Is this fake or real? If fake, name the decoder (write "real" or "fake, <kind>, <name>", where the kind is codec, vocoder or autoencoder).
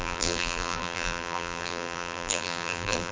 fake, vocoder, BigVGAN v2